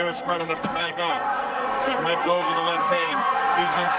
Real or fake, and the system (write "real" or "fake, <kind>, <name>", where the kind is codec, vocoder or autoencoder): fake, codec, SNAC